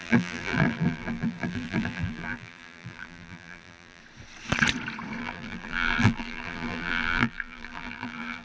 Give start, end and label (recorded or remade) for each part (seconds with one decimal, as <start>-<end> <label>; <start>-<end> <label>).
0.0-4.0 remade; 4.0-5.2 recorded; 5.2-8.4 remade